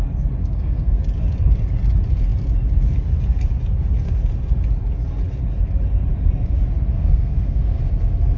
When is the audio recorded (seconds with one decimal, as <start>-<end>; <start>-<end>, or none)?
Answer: 0.0-0.4; 1.0-6.9; 7.8-8.4